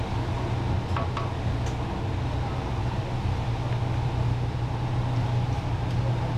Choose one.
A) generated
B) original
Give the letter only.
B